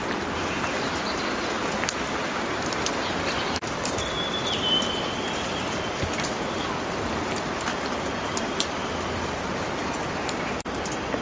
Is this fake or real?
real